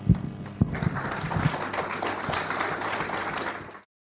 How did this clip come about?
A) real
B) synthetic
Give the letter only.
A